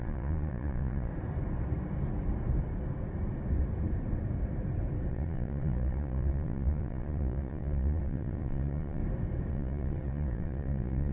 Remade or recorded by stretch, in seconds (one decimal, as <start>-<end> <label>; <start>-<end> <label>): 0.0-1.1 remade; 1.1-5.1 recorded; 5.1-9.0 remade; 9.0-9.5 recorded; 9.5-11.1 remade